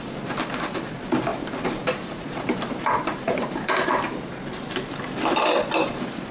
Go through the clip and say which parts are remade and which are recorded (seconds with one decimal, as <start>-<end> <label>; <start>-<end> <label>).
0.0-1.3 recorded; 1.3-4.3 remade; 4.3-6.3 recorded